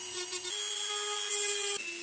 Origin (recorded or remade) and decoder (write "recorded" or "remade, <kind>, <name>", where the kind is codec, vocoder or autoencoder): recorded